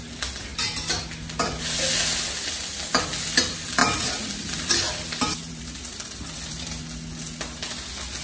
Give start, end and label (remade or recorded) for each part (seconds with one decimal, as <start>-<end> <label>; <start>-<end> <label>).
0.0-3.8 recorded; 3.8-4.7 remade; 4.7-5.4 recorded; 5.4-6.8 remade; 6.8-8.2 recorded